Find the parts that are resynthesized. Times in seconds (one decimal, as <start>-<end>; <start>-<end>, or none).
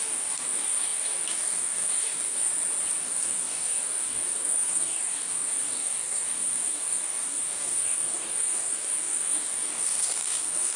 0.0-2.5; 3.0-10.8